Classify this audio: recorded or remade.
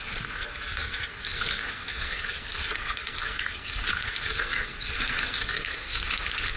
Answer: remade